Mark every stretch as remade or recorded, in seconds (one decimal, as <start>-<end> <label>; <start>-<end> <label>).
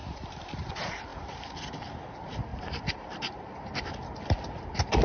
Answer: 0.0-0.7 remade; 0.7-2.5 recorded; 2.5-3.6 remade; 3.6-5.0 recorded